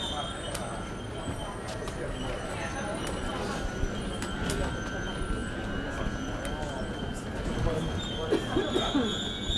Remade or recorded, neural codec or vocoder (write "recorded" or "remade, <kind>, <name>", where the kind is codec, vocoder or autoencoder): recorded